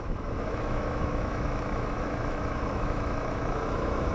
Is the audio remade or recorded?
remade